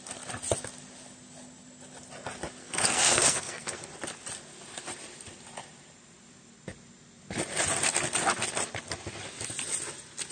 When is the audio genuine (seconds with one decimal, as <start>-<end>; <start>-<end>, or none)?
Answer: 0.0-2.6; 3.9-10.3